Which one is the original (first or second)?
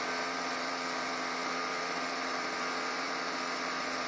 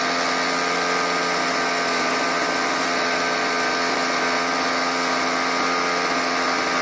second